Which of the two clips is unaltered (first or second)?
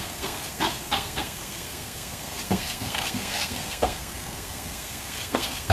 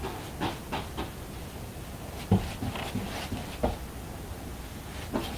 second